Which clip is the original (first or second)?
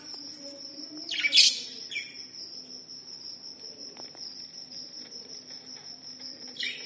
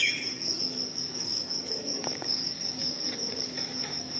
first